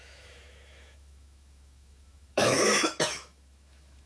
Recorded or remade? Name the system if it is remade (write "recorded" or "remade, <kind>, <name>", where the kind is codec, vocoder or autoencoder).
remade, autoencoder, DAC-VAE